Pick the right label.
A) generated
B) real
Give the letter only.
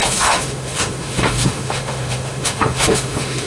A